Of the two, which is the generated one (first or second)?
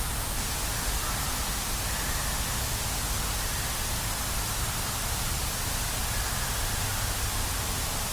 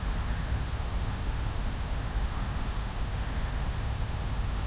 second